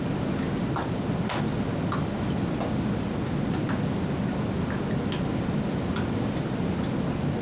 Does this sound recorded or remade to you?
recorded